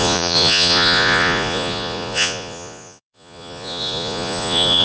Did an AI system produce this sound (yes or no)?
yes